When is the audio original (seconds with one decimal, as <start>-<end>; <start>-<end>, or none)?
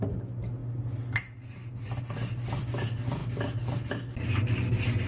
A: 0.0-5.1